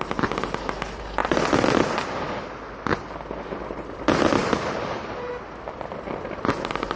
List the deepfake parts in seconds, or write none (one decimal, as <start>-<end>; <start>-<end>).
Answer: 4.4-5.3